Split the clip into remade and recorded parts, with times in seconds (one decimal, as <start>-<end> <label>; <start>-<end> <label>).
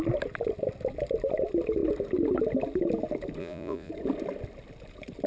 0.0-3.4 recorded; 3.4-3.9 remade; 3.9-5.3 recorded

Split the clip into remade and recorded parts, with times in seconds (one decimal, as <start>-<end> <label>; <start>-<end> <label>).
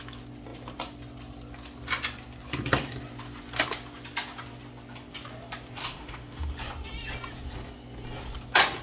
0.0-5.8 recorded; 5.8-6.5 remade; 6.5-8.8 recorded